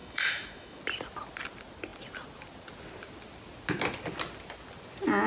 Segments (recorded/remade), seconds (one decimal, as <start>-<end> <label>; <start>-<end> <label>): 0.0-0.8 remade; 0.8-5.3 recorded